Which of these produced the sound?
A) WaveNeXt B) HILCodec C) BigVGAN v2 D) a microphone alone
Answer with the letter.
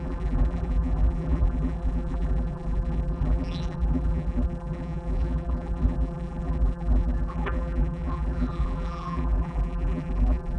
C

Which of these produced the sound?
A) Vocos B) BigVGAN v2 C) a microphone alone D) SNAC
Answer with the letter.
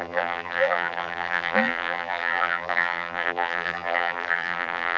B